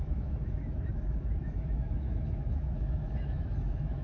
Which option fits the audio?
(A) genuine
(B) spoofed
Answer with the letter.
B